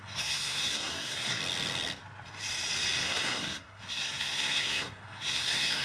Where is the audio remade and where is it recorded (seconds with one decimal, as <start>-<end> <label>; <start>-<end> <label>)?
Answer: 0.0-1.4 remade; 1.4-3.0 recorded; 3.0-5.8 remade